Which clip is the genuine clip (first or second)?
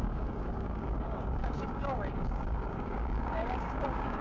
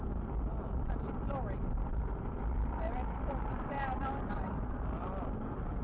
second